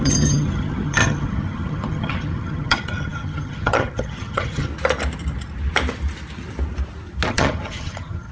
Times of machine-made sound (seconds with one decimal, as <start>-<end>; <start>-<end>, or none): 0.0-4.7; 7.3-8.3